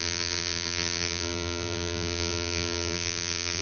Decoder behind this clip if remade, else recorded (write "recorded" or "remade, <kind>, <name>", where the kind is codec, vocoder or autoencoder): remade, vocoder, BigVGAN v2